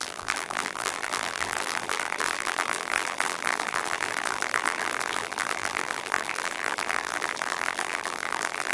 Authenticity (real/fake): fake